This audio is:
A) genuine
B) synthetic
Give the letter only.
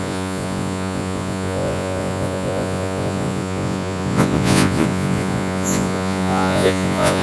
B